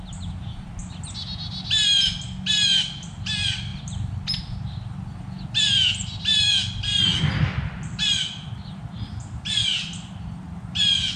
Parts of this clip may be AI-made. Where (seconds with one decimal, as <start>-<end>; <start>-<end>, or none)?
none